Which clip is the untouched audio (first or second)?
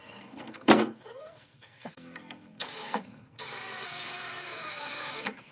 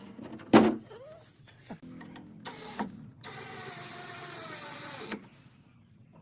second